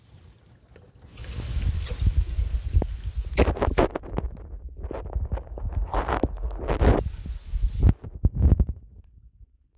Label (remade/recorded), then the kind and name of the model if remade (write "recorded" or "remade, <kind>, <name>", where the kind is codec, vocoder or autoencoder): recorded